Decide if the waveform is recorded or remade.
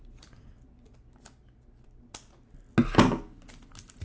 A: recorded